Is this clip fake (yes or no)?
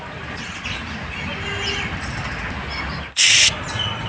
no